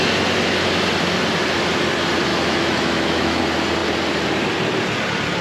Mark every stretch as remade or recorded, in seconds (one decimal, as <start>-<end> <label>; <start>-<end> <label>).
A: 0.0-2.3 recorded; 2.3-3.4 remade; 3.4-5.4 recorded